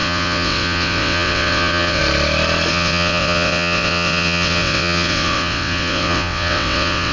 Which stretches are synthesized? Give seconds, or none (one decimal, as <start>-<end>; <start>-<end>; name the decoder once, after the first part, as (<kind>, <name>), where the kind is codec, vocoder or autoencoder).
0.0-2.0 (vocoder, WaveNeXt); 2.7-7.1